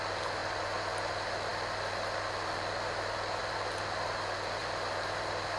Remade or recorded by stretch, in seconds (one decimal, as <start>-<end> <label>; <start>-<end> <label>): 0.0-5.6 recorded